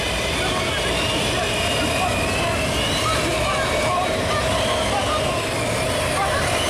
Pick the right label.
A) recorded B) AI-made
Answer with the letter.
A